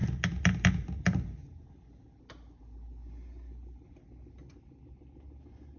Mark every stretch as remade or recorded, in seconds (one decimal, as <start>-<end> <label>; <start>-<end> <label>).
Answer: 0.0-5.8 recorded